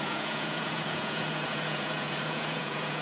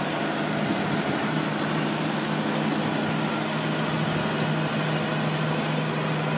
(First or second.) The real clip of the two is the second